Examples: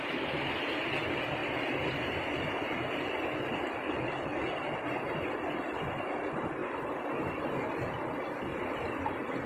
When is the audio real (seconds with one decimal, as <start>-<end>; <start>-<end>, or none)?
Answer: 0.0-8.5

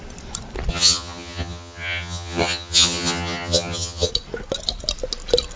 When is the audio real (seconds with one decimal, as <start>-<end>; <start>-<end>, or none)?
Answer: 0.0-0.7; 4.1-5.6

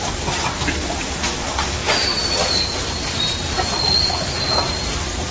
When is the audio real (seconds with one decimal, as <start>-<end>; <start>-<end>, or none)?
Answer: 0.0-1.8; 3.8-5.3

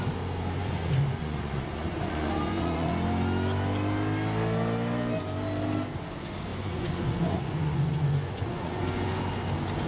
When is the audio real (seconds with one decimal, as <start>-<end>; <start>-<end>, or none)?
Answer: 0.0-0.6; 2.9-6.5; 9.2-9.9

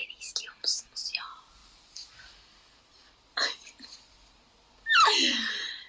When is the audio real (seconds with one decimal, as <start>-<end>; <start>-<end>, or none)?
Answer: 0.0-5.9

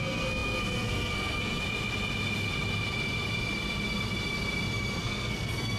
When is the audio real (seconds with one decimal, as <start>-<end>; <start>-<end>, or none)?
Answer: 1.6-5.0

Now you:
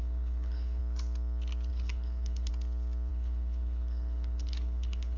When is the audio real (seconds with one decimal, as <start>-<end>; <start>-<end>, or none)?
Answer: 0.8-1.7; 2.5-3.1